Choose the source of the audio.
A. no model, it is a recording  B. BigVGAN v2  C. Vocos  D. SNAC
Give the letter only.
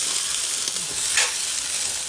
A